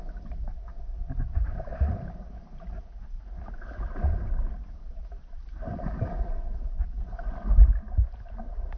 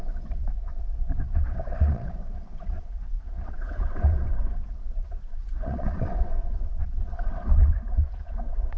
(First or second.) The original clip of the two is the first